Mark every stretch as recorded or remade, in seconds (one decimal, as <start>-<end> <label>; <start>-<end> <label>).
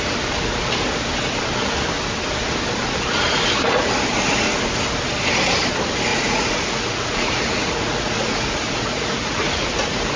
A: 0.0-6.1 recorded; 6.1-9.7 remade; 9.7-10.2 recorded